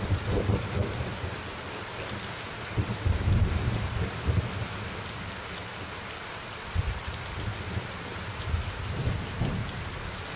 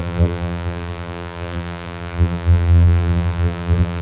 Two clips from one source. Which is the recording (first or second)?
first